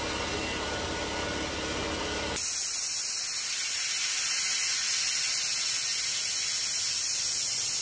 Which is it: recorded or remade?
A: recorded